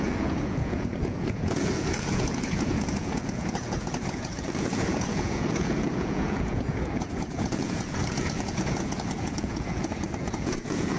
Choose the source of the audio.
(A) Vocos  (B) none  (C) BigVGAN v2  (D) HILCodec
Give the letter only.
A